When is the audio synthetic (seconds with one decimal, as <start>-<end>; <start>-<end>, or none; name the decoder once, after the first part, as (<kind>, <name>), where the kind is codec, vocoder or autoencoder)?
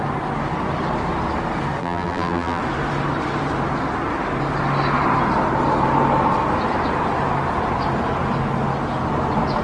1.8-2.6 (vocoder, BigVGAN v2)